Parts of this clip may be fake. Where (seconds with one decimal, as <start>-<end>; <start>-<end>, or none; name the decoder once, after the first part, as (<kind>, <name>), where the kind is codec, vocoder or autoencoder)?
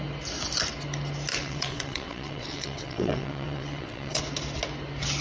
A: 1.3-4.2 (vocoder, WaveNeXt)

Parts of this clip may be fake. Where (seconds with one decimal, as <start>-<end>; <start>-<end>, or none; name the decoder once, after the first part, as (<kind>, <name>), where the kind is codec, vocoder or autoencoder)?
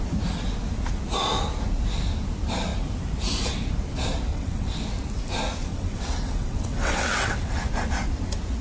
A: 4.3-4.8 (vocoder, WaveNeXt); 5.7-7.6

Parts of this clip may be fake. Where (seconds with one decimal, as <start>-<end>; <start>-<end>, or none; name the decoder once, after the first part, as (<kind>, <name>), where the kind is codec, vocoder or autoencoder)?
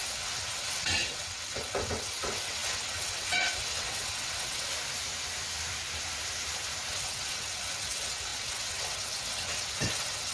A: 0.0-4.7 (vocoder, WaveNeXt); 6.9-10.3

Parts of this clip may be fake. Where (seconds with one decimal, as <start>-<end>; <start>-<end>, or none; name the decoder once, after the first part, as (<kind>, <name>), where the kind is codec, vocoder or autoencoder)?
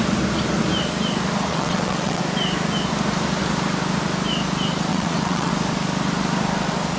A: 1.5-2.2 (vocoder, WaveNeXt); 4.9-5.5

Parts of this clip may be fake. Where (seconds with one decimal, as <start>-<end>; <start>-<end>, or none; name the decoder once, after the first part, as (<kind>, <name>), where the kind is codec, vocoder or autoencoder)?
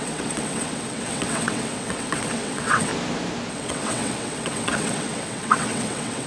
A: 0.0-2.9 (vocoder, WaveNeXt); 3.5-6.3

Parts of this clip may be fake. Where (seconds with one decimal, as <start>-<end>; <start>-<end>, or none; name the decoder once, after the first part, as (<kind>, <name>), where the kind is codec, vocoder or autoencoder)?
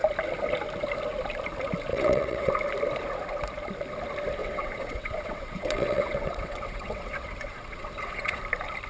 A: 1.9-2.5 (vocoder, WaveNeXt); 4.4-8.4